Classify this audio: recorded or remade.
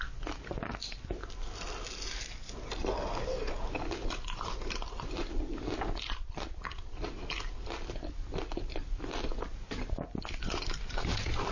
recorded